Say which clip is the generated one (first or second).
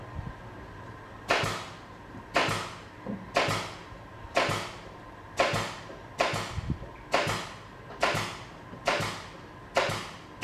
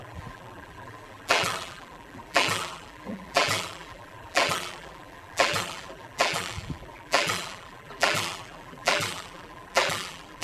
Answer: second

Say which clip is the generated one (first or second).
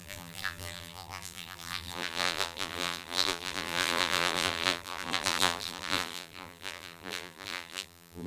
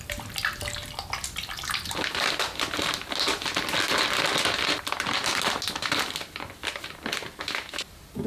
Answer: first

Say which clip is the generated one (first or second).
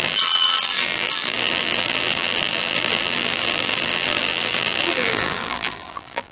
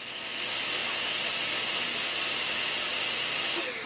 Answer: first